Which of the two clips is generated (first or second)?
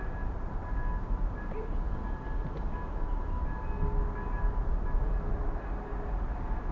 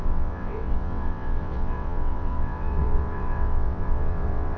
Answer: second